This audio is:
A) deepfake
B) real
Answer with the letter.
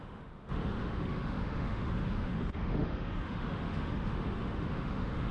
A